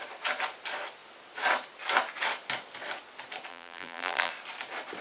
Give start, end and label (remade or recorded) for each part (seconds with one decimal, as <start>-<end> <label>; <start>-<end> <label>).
0.0-3.5 recorded; 3.5-4.3 remade; 4.3-5.0 recorded

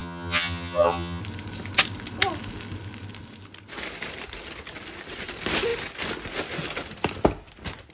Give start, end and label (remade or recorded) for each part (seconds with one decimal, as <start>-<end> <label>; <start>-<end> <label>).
0.0-1.2 remade; 1.2-7.9 recorded

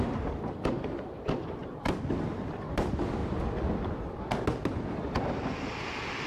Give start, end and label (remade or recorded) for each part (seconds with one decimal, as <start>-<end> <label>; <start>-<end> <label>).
0.0-1.6 remade; 1.6-2.3 recorded; 2.3-3.2 remade; 3.2-4.7 recorded; 4.7-6.3 remade

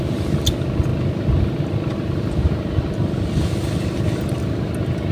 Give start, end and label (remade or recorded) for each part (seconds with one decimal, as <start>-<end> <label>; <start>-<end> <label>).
0.0-5.1 recorded

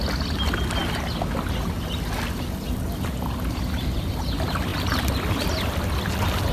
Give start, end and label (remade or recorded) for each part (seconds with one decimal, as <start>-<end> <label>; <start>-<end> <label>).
0.0-6.5 recorded

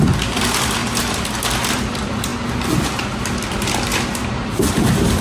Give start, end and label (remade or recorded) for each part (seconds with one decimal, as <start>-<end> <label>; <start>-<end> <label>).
0.0-2.3 remade; 2.3-3.2 recorded; 3.2-5.2 remade